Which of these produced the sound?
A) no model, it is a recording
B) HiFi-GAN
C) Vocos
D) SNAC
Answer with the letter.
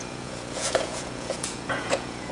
C